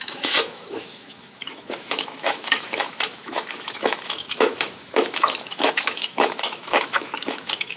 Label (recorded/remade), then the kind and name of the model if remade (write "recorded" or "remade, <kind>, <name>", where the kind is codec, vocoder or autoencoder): remade, autoencoder, DAC-VAE